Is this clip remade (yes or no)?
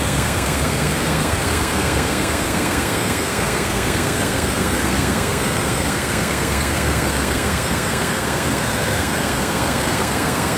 yes